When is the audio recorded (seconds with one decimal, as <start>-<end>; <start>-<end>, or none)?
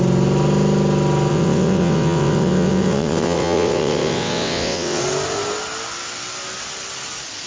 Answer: 0.0-1.3; 5.0-7.5